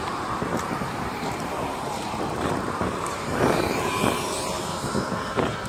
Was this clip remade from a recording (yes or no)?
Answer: yes